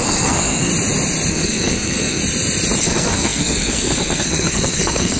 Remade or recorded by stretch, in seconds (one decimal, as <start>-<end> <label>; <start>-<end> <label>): 0.0-0.7 remade; 0.7-1.3 recorded; 1.3-2.2 remade; 2.2-2.8 recorded; 2.8-5.2 remade